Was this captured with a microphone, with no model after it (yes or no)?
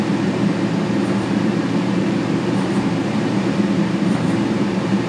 no